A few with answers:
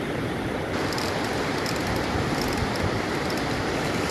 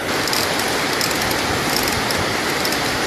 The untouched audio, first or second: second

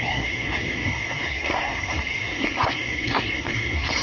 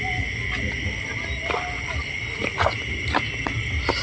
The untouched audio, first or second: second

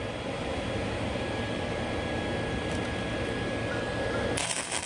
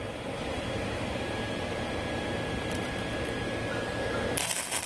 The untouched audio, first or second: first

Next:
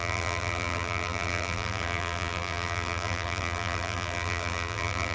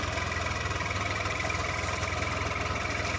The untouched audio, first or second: second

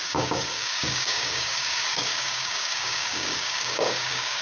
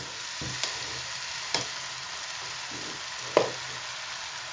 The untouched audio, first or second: second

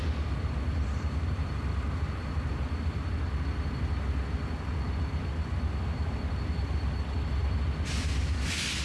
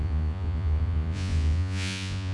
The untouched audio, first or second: first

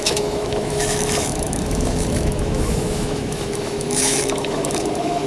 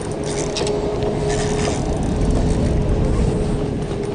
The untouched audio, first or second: second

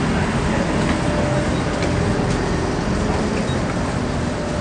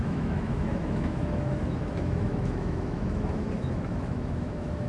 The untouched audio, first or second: first